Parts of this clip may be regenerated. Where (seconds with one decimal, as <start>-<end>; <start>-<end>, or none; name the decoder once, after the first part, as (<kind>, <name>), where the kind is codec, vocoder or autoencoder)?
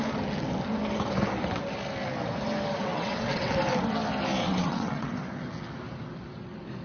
2.8-3.5 (vocoder, WaveNeXt); 4.4-5.1